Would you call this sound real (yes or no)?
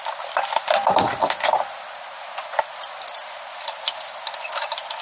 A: yes